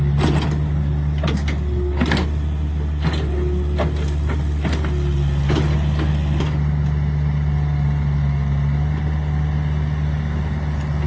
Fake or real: real